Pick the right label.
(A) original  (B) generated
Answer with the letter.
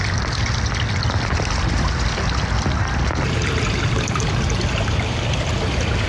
A